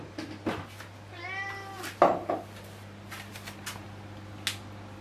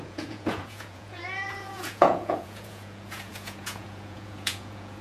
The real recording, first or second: first